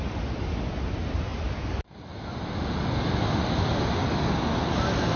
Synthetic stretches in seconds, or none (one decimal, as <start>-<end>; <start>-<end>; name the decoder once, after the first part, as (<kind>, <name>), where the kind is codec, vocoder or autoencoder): none